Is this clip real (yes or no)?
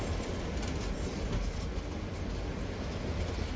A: yes